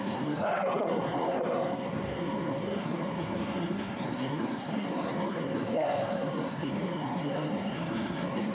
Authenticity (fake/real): fake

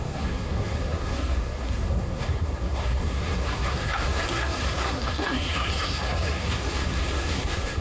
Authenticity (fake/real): fake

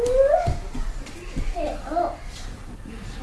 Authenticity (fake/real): real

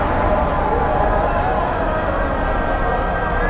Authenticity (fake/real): real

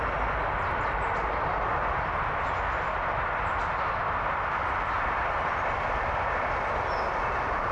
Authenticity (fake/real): real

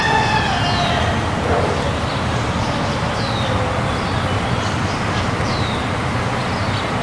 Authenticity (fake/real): real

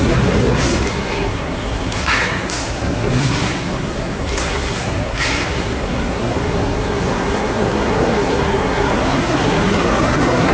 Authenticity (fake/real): fake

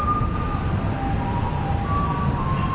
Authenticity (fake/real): real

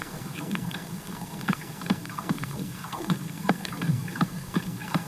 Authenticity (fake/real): fake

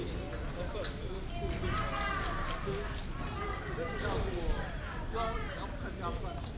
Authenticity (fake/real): real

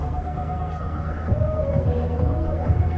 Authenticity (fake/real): fake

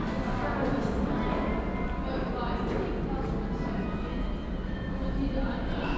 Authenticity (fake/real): real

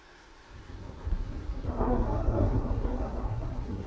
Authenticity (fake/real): fake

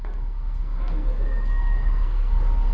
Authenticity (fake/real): fake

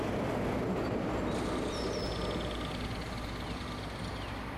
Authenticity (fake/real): real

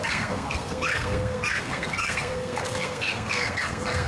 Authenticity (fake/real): fake